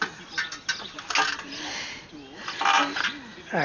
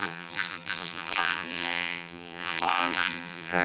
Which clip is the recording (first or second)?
first